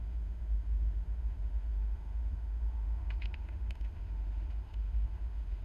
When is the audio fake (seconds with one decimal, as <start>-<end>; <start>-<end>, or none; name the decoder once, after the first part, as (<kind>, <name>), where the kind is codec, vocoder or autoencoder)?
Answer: 0.0-5.6 (autoencoder, DAC-VAE)